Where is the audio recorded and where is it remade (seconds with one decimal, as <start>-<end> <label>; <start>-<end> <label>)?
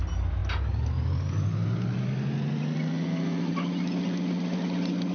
0.0-5.1 recorded